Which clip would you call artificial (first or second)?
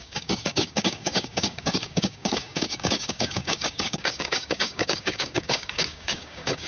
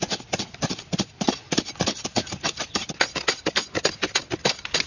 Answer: first